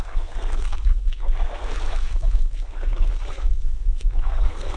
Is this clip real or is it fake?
fake